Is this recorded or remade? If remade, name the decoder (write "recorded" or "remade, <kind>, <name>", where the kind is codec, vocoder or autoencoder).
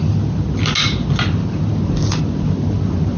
recorded